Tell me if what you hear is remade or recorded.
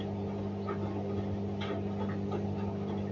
recorded